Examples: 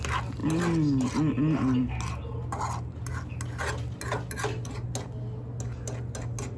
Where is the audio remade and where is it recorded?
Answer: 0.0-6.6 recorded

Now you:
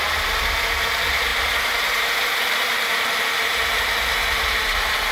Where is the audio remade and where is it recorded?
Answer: 0.0-5.1 remade

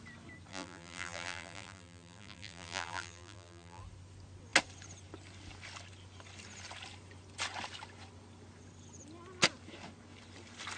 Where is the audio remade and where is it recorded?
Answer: 0.0-0.5 recorded; 0.5-3.8 remade; 3.8-10.8 recorded